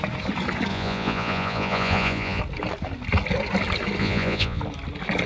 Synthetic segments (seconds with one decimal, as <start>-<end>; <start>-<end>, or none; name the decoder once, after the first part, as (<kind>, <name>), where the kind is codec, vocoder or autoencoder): 0.7-2.4 (vocoder, Vocos); 4.0-4.6